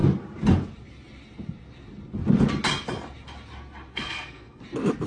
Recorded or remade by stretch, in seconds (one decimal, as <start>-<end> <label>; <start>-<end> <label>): 0.0-3.9 recorded; 3.9-4.6 remade; 4.6-5.1 recorded